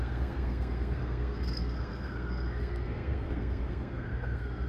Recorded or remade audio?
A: remade